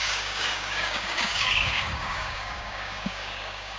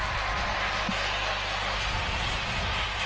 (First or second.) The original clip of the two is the second